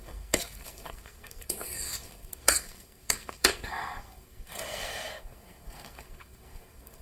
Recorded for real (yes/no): no